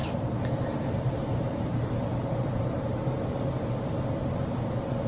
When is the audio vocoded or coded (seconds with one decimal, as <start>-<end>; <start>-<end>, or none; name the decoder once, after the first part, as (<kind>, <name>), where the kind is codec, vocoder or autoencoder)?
0.0-3.1 (vocoder, BigVGAN v2)